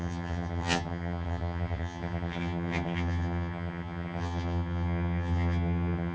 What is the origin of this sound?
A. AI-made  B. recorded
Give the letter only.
A